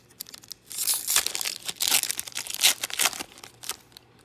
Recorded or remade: recorded